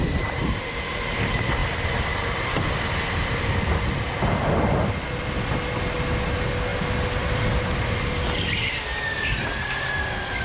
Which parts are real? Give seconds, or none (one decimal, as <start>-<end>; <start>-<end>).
0.0-10.4